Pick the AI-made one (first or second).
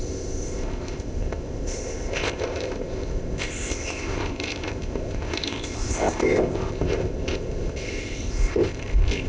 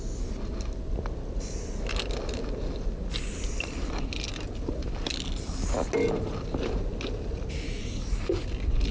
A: first